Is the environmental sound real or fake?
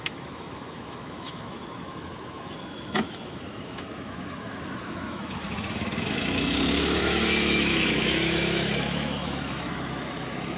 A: fake